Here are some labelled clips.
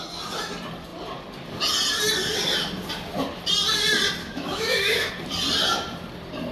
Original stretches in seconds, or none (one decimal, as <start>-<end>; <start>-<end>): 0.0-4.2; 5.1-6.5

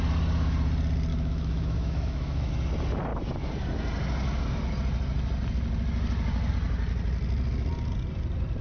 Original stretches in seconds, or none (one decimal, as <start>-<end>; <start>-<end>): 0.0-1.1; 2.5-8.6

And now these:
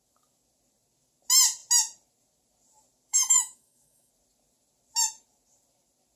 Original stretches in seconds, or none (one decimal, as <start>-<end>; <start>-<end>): 0.0-3.1; 4.1-6.2

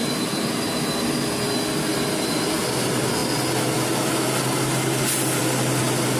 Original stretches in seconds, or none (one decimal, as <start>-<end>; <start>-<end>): 0.0-6.2

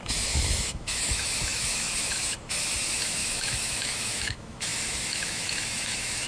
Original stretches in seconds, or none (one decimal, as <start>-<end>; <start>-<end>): none

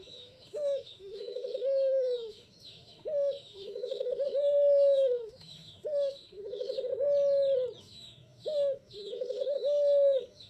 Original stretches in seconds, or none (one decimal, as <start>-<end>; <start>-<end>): 6.9-7.8

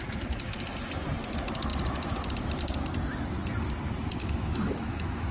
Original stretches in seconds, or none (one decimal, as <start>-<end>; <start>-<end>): 0.0-4.2

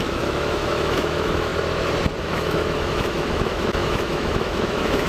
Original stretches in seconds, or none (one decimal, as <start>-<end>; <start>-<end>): 1.5-2.2